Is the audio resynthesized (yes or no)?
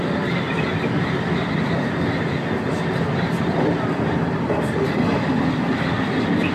no